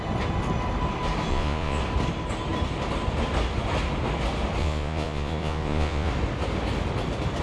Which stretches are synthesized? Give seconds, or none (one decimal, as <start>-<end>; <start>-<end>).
1.3-1.8; 4.6-6.1